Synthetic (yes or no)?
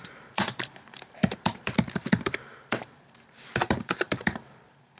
yes